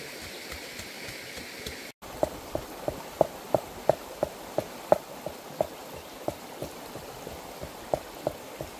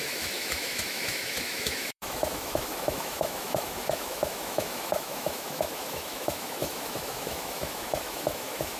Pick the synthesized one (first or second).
second